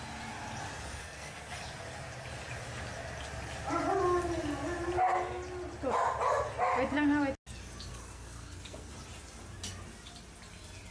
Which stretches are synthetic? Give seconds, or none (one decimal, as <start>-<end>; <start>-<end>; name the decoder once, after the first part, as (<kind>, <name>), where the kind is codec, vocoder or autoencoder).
1.0-1.5 (codec, SNAC); 7.9-8.9